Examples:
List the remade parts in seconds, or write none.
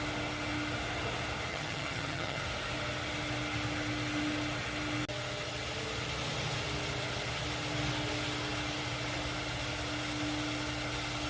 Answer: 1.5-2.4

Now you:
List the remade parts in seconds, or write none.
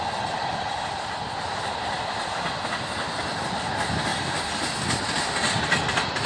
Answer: none